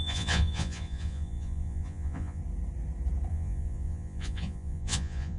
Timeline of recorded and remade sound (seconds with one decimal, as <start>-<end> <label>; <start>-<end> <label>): 0.0-2.4 remade; 2.4-3.3 recorded; 3.3-5.4 remade